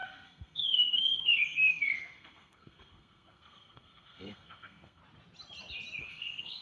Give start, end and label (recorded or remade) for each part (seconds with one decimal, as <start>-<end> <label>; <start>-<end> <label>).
0.0-5.0 remade; 5.0-6.0 recorded; 6.0-6.6 remade